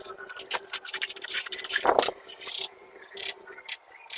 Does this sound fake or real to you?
fake